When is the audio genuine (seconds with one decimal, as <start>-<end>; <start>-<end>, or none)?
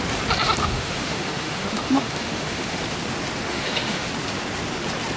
0.0-0.6; 2.8-3.5; 4.1-5.2